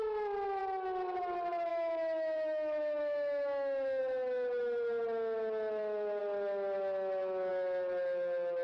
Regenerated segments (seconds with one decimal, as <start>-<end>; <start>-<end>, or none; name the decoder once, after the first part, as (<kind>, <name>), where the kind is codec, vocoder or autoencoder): 1.7-4.0 (autoencoder, DAC-VAE)